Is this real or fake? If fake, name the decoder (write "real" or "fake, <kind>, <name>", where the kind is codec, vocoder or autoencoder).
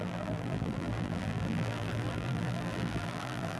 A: fake, vocoder, BigVGAN v2